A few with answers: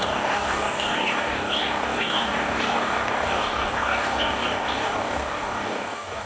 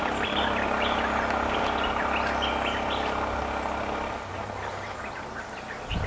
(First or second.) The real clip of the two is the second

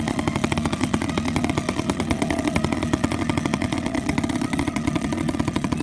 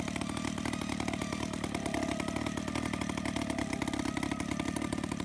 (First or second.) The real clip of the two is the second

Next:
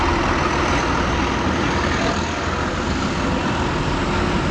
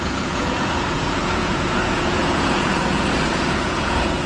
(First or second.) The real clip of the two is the first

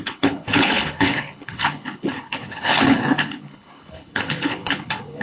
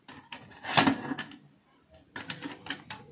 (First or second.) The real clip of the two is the second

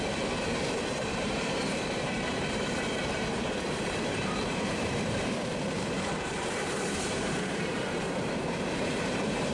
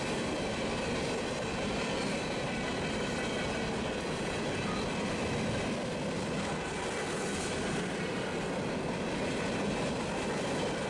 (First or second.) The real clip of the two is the second